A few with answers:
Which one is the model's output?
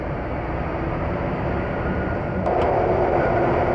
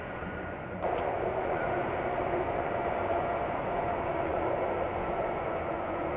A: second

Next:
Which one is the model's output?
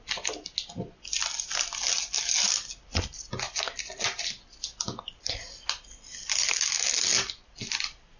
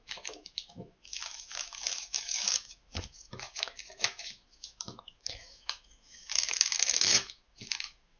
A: second